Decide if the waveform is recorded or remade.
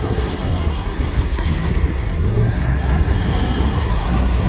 remade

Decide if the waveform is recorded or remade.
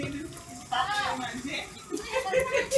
recorded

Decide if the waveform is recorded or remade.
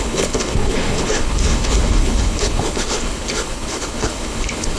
remade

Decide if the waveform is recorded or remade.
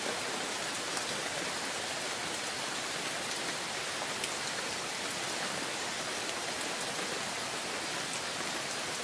recorded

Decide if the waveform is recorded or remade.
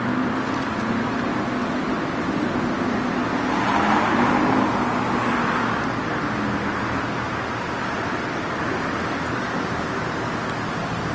recorded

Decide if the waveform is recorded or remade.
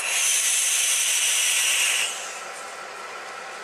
recorded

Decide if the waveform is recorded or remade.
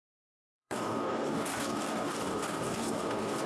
remade